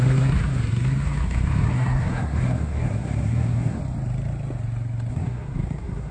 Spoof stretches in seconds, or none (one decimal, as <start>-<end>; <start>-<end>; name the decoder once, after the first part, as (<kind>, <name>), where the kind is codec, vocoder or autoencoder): 0.0-3.8 (codec, SNAC); 5.1-6.1